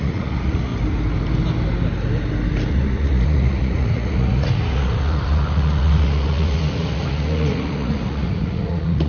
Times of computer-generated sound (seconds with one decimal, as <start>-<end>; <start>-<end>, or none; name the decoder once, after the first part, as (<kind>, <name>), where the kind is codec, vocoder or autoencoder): 0.0-0.7 (vocoder, Vocos); 2.7-9.1